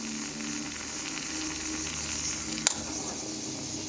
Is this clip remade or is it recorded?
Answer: recorded